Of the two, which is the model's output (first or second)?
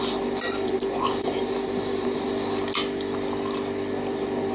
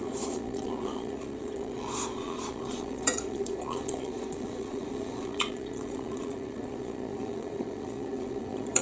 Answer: second